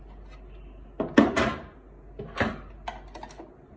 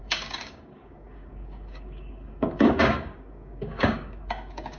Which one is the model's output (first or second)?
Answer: second